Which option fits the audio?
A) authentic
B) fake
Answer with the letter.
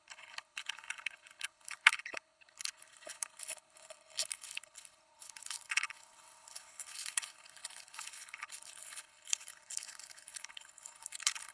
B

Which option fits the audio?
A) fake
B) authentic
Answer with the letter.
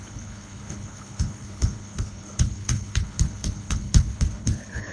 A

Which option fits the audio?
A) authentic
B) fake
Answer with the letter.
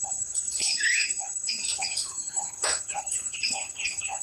B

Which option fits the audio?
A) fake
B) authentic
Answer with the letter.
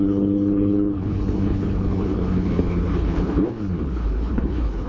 A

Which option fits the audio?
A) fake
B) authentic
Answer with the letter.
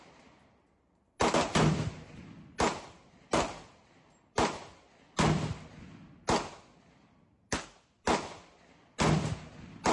B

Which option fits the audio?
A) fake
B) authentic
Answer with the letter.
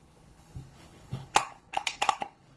A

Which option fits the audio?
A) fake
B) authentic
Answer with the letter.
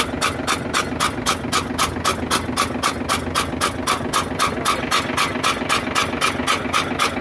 B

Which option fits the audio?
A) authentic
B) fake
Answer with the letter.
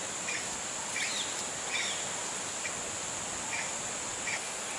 A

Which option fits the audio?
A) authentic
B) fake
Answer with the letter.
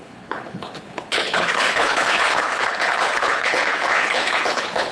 B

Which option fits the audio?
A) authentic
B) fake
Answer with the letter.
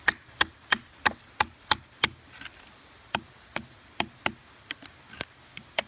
A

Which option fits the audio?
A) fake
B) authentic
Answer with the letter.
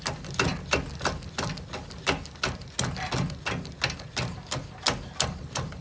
B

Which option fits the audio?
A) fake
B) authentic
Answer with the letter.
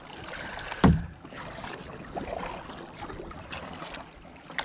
B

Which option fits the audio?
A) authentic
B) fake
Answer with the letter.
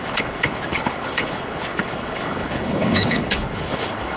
B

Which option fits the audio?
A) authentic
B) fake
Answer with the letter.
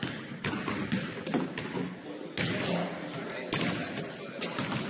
A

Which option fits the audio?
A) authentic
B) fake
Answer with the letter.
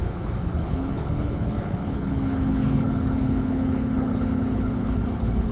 B